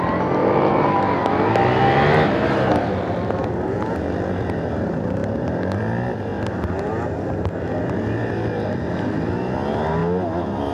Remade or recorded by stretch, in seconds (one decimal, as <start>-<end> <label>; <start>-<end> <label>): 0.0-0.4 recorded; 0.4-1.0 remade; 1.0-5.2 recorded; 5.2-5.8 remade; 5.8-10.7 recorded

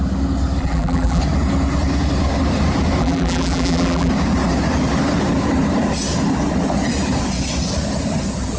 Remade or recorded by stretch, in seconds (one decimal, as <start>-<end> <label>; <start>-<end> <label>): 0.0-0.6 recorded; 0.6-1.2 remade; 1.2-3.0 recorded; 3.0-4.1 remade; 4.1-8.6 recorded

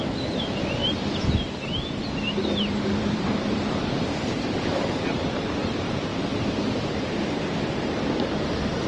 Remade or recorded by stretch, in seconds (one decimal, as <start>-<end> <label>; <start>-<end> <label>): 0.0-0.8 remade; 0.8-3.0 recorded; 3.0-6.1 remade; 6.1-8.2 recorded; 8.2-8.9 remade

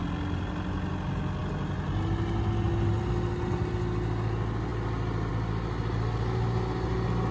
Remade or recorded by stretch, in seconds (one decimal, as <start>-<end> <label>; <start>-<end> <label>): 0.0-7.3 recorded

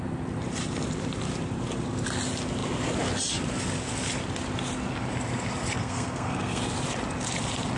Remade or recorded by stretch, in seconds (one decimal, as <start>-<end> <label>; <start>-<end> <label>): 0.0-5.8 recorded; 5.8-6.6 remade; 6.6-7.8 recorded

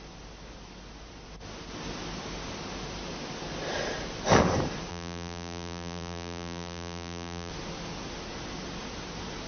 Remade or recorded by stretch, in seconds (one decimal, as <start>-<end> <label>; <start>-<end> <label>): 0.0-4.9 recorded; 4.9-7.5 remade; 7.5-9.5 recorded

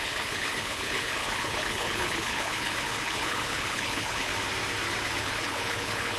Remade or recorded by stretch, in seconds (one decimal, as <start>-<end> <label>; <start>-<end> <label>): 0.0-4.3 remade; 4.3-5.2 recorded; 5.2-6.2 remade

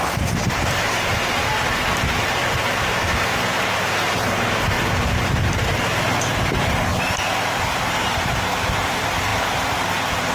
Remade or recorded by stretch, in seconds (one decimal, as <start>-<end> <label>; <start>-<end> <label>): 0.0-0.4 recorded; 0.4-1.1 remade; 1.1-2.4 recorded; 2.4-6.9 remade; 6.9-10.3 recorded